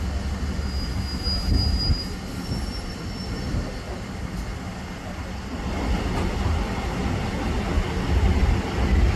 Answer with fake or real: real